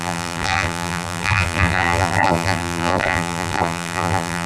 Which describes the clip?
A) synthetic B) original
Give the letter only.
A